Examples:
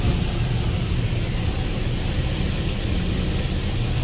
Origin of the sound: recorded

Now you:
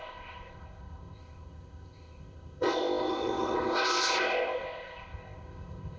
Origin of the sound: remade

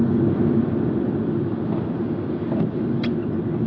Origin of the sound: recorded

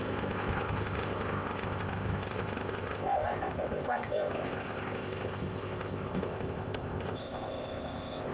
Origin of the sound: remade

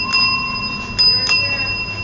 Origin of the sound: recorded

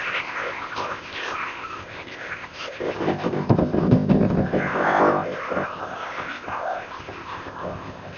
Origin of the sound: remade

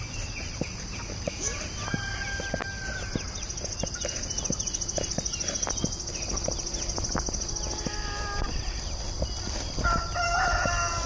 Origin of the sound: recorded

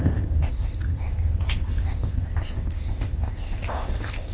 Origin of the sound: remade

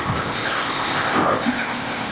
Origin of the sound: remade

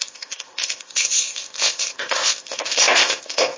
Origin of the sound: remade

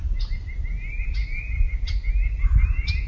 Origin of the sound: recorded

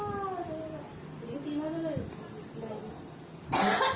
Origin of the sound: recorded